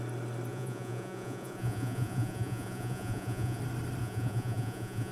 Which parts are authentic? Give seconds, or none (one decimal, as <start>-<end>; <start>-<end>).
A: 0.0-0.5; 3.6-4.0